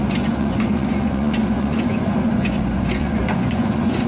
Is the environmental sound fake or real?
fake